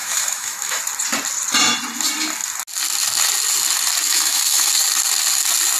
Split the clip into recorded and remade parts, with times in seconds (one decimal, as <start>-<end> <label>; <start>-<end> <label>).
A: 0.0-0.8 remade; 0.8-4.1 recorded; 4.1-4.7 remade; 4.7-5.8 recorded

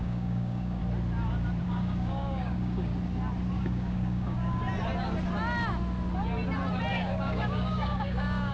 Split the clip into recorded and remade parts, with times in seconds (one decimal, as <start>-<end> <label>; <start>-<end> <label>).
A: 0.0-0.8 remade; 0.8-1.6 recorded; 1.6-2.9 remade; 2.9-3.6 recorded; 3.6-4.6 remade; 4.6-6.9 recorded; 6.9-8.5 remade

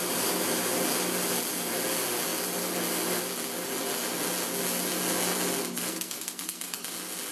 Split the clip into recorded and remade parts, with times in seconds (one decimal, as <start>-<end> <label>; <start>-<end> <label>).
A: 0.0-5.8 recorded; 5.8-6.8 remade; 6.8-7.3 recorded

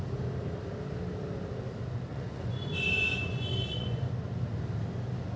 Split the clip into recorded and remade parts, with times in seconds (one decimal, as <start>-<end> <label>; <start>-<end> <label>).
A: 0.0-2.1 recorded; 2.1-4.1 remade; 4.1-5.4 recorded

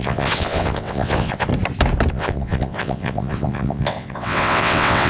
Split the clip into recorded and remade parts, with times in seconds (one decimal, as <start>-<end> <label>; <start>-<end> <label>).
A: 0.0-1.5 remade; 1.5-2.1 recorded; 2.1-5.1 remade